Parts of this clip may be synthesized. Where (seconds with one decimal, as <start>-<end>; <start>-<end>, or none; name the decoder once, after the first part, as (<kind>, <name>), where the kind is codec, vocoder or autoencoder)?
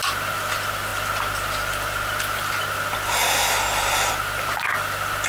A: none